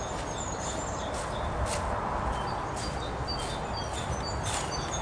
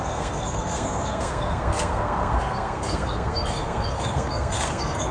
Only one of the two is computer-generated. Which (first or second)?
second